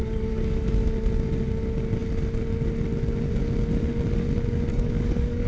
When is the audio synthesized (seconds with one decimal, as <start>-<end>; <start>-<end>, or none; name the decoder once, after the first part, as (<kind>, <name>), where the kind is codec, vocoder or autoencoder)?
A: 0.0-0.7 (codec, DAC); 4.7-5.5